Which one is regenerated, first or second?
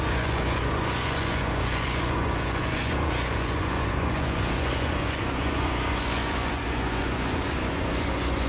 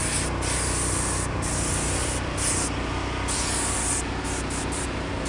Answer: first